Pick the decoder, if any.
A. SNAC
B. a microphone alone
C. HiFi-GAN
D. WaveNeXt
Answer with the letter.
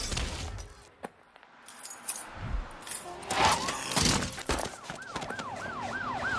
B